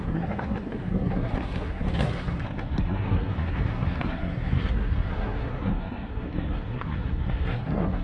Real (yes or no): no